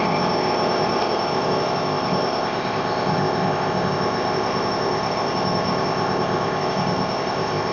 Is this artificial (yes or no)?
yes